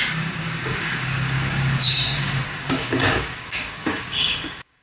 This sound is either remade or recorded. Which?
remade